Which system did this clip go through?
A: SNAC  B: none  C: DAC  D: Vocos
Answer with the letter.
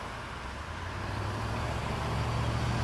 B